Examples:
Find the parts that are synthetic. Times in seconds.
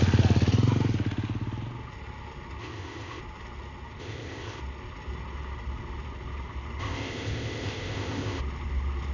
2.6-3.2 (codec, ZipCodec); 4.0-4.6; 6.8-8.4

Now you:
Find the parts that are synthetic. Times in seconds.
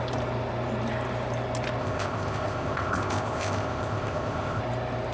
1.8-4.6 (codec, ZipCodec)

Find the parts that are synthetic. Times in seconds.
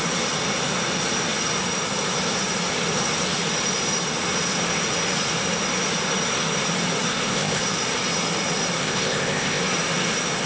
7.1-7.6 (codec, ZipCodec); 8.8-9.6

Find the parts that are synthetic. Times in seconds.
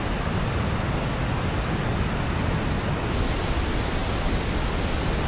none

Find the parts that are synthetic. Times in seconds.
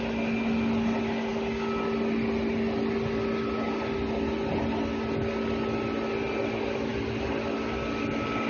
none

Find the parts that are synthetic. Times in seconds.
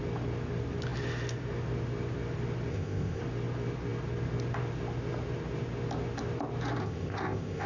2.7-3.2 (codec, ZipCodec); 6.8-7.7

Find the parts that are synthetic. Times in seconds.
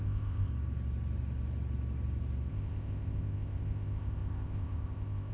0.0-0.5 (codec, ZipCodec); 2.5-5.3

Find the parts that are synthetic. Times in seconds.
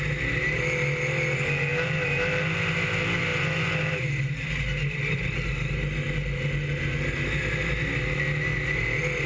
none